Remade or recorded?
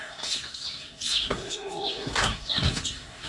remade